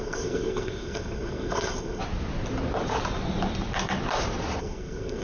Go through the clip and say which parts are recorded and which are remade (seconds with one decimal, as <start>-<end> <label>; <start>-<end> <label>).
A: 0.0-2.0 remade; 2.0-4.6 recorded; 4.6-5.2 remade